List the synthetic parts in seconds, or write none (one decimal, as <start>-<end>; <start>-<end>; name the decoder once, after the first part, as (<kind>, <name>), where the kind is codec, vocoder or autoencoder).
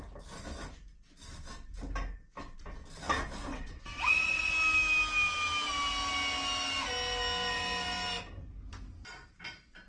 3.5-4.5 (vocoder, WaveNeXt)